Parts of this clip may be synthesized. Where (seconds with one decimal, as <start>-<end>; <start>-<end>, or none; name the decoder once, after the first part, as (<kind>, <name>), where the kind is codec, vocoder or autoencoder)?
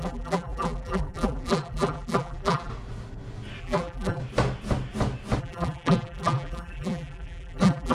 0.0-2.7 (vocoder, BigVGAN v2); 3.6-4.2; 5.4-7.9